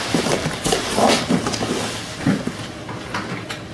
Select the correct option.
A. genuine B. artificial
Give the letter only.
A